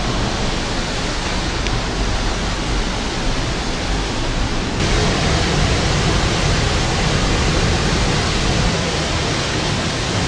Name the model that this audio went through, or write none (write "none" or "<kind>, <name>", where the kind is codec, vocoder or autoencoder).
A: none